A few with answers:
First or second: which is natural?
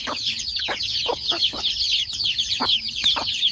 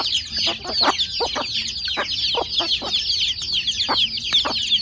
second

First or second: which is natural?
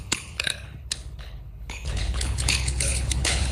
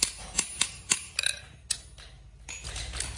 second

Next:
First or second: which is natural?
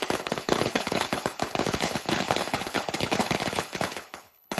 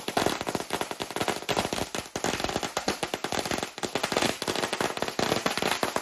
second